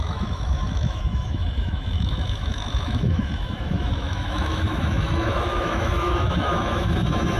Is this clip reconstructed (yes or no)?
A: yes